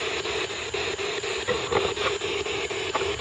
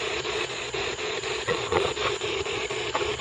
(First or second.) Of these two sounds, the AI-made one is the second